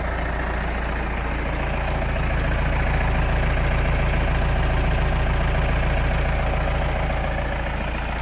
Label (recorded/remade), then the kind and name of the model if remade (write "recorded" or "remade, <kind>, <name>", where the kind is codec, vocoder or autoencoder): recorded